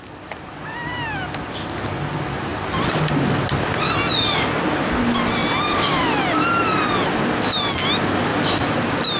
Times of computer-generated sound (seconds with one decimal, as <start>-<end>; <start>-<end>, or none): none